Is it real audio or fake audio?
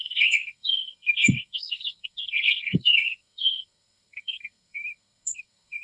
fake